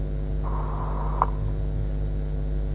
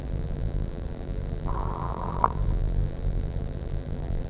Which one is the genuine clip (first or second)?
first